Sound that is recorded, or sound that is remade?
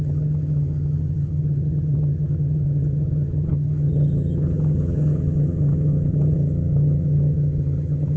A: remade